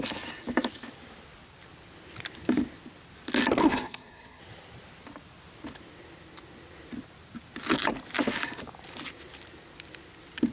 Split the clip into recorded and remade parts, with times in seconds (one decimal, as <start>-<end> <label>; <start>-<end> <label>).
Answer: 0.0-3.6 recorded; 3.6-4.4 remade; 4.4-10.5 recorded